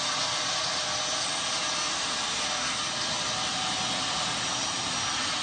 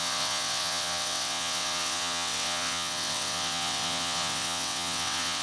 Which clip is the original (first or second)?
first